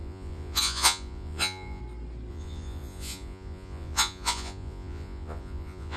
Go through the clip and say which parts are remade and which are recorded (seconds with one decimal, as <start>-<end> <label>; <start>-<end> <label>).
0.0-1.8 remade; 1.8-2.3 recorded; 2.3-6.0 remade